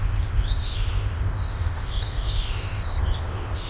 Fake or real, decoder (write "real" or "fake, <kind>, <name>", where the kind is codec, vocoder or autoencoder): fake, codec, ZipCodec